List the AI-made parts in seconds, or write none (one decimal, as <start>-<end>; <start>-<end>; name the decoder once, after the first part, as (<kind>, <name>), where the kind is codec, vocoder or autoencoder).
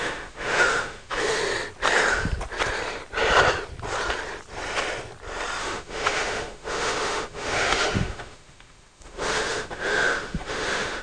0.0-1.4 (autoencoder, DAC-VAE); 5.6-11.0